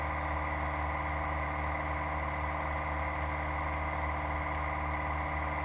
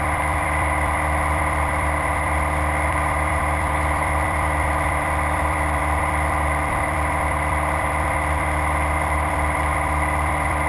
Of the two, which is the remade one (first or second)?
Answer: second